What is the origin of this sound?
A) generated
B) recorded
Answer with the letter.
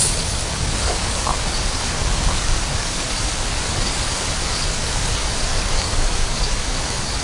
A